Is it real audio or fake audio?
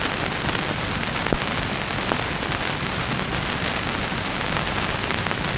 real